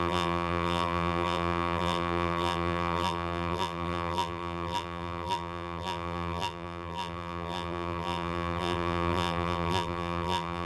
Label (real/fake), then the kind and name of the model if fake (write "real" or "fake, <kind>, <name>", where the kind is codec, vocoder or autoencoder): fake, vocoder, BigVGAN v2